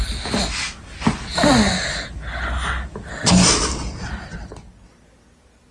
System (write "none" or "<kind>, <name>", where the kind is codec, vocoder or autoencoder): none